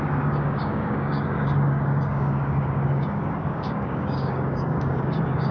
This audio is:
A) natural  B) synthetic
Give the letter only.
B